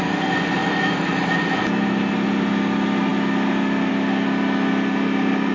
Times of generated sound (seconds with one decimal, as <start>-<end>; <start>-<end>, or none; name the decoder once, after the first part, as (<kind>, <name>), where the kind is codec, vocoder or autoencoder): none